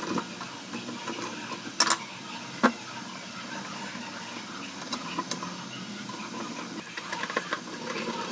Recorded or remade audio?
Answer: recorded